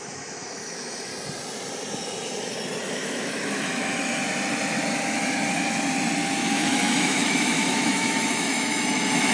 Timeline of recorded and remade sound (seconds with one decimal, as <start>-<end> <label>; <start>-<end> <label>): 0.0-1.1 remade; 1.1-2.8 recorded; 2.8-4.2 remade; 4.2-6.5 recorded; 6.5-9.3 remade